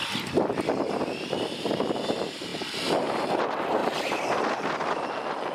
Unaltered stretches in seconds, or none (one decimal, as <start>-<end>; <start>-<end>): 0.0-5.5